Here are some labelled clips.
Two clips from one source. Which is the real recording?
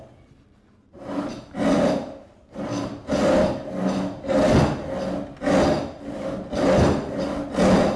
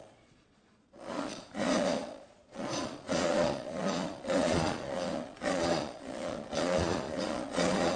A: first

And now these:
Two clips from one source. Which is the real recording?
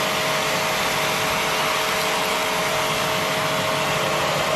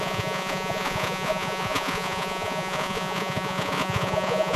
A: first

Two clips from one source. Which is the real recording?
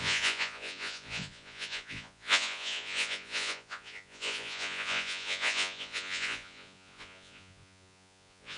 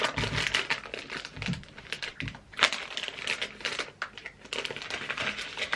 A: second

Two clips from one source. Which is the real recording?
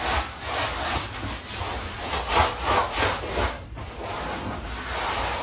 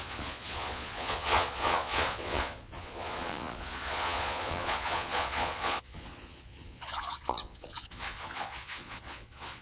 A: first